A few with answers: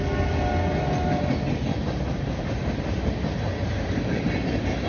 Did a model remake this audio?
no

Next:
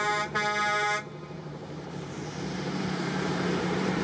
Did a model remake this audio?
yes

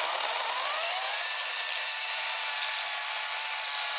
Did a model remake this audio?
no